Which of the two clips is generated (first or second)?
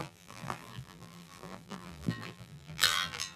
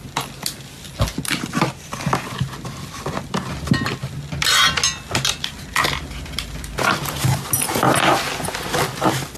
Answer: first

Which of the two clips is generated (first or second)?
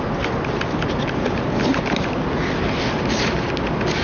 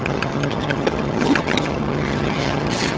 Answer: second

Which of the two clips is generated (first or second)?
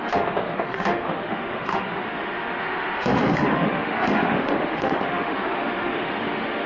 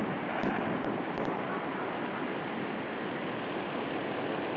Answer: first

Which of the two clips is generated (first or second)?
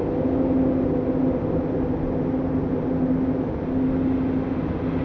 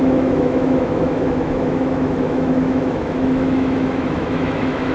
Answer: second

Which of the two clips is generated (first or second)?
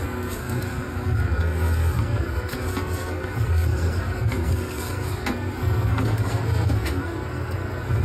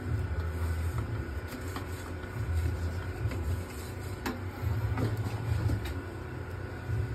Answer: first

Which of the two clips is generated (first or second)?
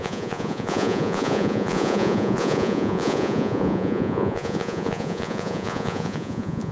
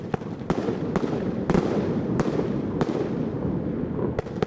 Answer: first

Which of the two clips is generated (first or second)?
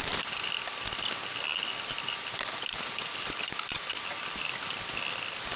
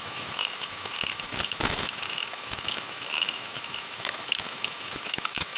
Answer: second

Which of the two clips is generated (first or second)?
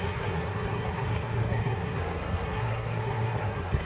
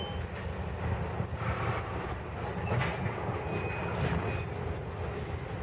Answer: first